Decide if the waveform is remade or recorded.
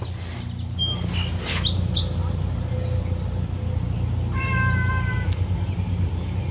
recorded